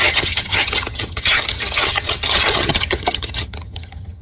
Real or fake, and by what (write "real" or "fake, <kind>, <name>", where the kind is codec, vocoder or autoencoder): fake, vocoder, HiFi-GAN